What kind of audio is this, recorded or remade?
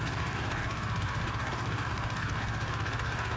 remade